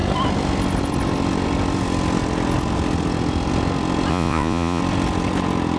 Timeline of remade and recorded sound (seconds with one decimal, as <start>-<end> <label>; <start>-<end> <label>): 0.0-4.1 recorded; 4.1-4.8 remade; 4.8-5.8 recorded